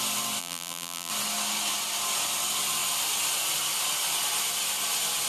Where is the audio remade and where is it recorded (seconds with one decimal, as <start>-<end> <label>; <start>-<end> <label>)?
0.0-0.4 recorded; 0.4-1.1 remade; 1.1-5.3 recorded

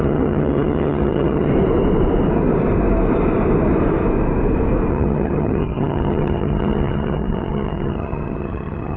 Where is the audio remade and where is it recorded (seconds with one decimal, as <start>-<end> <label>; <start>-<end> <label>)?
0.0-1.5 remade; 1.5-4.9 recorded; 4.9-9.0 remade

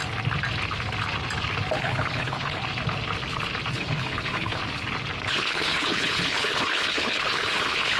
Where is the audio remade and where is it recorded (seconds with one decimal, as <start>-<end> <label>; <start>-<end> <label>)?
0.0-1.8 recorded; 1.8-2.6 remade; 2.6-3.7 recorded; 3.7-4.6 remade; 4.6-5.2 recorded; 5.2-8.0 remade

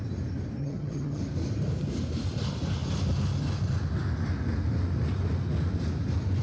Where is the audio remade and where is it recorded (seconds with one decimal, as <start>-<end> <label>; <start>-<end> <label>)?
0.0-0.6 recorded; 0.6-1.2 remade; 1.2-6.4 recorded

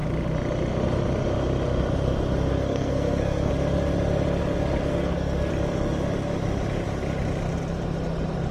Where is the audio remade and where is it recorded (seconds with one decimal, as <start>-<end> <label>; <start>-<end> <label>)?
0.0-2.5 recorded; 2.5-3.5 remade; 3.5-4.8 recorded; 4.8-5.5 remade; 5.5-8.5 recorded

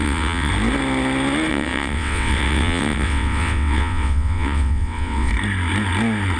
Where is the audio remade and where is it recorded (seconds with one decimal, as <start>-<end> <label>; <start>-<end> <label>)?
0.0-0.5 remade; 0.5-1.5 recorded; 1.5-5.3 remade; 5.3-6.4 recorded